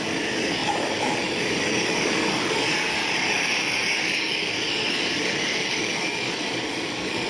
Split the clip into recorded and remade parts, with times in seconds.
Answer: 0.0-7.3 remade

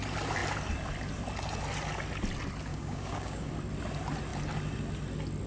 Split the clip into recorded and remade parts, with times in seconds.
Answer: 0.0-2.7 recorded; 2.7-3.5 remade; 3.5-5.5 recorded

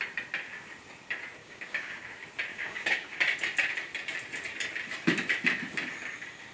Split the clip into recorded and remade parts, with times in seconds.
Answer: 0.0-1.4 recorded; 1.4-2.0 remade; 2.0-2.5 recorded; 2.5-3.2 remade; 3.2-6.5 recorded

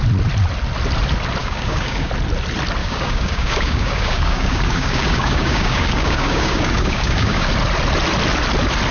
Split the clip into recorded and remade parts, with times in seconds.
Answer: 0.0-1.4 recorded; 1.4-2.1 remade; 2.1-2.8 recorded; 2.8-7.5 remade; 7.5-8.9 recorded